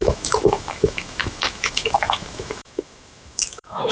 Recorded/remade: remade